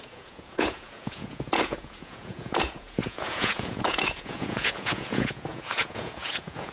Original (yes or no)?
no